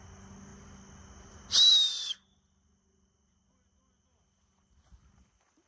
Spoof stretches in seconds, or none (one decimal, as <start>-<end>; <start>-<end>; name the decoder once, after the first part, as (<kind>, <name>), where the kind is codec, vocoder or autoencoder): none